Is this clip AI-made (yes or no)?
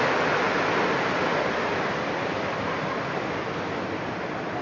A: no